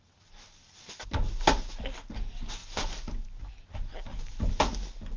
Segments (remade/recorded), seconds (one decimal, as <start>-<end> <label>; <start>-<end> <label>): 0.0-5.2 recorded